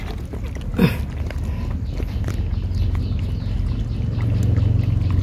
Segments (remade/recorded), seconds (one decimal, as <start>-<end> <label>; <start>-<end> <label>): 0.0-5.2 recorded